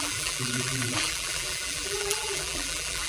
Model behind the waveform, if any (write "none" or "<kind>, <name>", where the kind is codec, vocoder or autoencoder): vocoder, BigVGAN v2